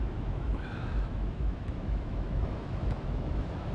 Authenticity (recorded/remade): remade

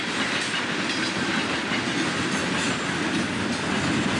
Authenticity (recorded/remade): recorded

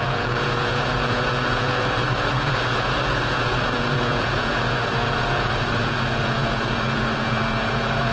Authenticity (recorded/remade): remade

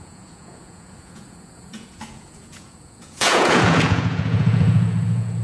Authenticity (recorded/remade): remade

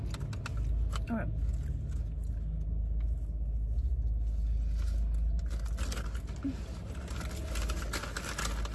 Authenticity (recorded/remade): recorded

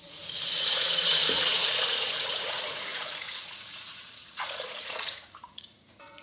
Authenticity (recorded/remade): remade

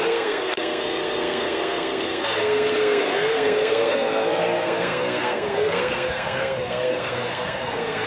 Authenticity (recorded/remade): remade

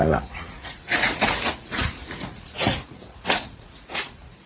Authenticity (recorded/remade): remade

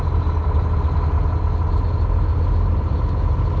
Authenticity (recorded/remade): recorded